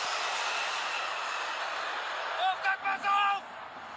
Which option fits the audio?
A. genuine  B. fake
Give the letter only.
A